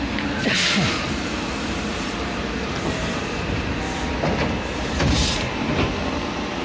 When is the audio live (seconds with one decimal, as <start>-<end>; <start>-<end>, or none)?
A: 0.0-1.9; 4.1-6.6